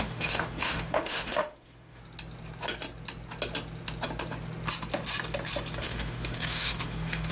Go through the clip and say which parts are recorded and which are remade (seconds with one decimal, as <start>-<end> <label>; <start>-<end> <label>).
0.0-2.0 remade; 2.0-5.8 recorded; 5.8-7.3 remade

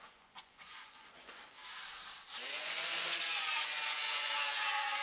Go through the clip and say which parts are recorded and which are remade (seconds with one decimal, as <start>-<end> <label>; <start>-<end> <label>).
0.0-1.6 remade; 1.6-2.5 recorded; 2.5-5.0 remade

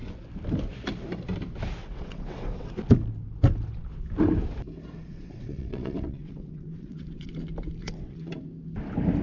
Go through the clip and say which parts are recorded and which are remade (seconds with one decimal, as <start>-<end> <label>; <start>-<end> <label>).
0.0-1.8 recorded; 1.8-2.7 remade; 2.7-5.1 recorded; 5.1-7.3 remade; 7.3-7.8 recorded; 7.8-8.3 remade; 8.3-9.2 recorded

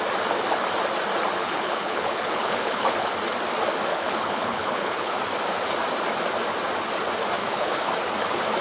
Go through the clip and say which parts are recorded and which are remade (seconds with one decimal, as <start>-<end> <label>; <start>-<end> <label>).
0.0-1.4 recorded; 1.4-3.1 remade; 3.1-3.9 recorded; 3.9-5.2 remade; 5.2-7.4 recorded; 7.4-7.9 remade; 7.9-8.6 recorded

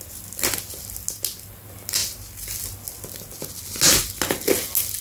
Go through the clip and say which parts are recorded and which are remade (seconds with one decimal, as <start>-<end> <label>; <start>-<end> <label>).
0.0-5.0 recorded

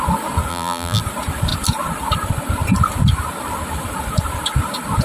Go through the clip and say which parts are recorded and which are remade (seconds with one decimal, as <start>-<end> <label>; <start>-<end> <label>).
0.0-0.5 recorded; 0.5-1.0 remade; 1.0-5.0 recorded

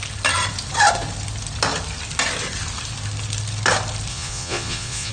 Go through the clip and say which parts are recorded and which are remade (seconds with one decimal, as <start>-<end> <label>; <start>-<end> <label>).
0.0-4.1 recorded; 4.1-5.1 remade

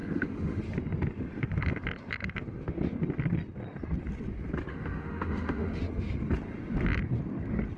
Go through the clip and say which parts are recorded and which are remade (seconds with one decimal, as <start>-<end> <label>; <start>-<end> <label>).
0.0-0.6 remade; 0.6-4.7 recorded; 4.7-5.8 remade; 5.8-7.8 recorded